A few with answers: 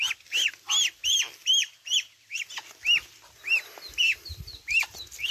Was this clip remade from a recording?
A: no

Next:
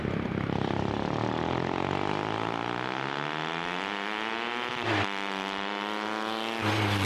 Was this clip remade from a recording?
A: no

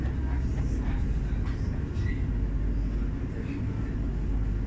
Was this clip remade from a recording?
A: no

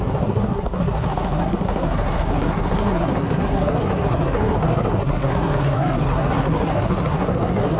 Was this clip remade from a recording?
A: yes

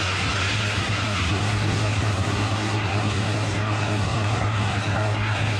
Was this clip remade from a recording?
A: yes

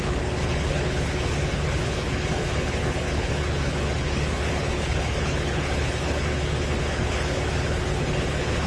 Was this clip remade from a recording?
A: yes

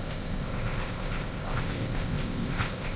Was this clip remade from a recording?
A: yes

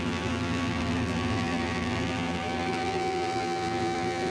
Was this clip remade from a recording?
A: yes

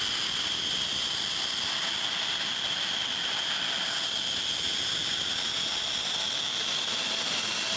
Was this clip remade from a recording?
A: no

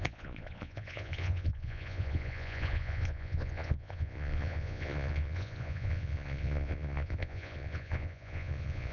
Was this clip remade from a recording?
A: yes